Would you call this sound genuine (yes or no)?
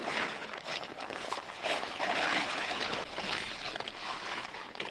no